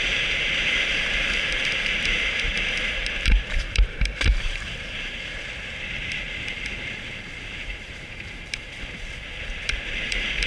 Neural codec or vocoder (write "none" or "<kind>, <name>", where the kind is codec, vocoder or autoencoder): vocoder, BigVGAN v2